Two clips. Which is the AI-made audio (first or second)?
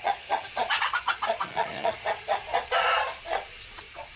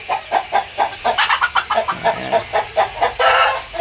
first